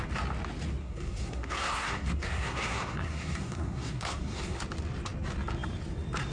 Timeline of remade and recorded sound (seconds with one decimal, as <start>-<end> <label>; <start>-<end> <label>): 0.0-0.8 recorded; 0.8-4.6 remade; 4.6-6.3 recorded